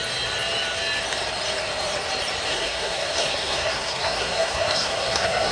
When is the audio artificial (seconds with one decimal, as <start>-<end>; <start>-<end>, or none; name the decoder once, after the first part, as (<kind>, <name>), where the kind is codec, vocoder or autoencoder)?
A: 2.5-5.5 (codec, SNAC)